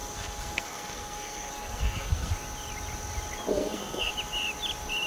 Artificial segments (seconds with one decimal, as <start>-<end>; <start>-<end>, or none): 0.0-2.3; 3.5-4.1